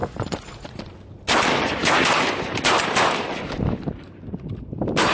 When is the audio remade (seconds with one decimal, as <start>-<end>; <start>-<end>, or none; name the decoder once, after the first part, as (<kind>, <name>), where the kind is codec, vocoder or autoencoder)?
0.0-0.8 (vocoder, Vocos)